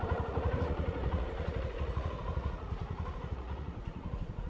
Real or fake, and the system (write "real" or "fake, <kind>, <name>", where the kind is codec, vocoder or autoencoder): fake, vocoder, Vocos